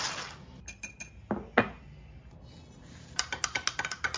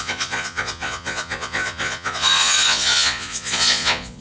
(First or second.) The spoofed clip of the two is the second